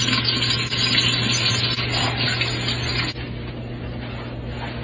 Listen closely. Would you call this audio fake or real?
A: real